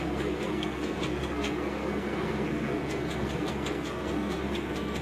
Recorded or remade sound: remade